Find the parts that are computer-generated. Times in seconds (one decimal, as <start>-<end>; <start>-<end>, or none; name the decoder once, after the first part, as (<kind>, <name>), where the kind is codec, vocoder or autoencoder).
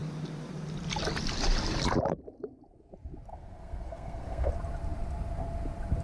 3.3-4.5 (codec, SNAC)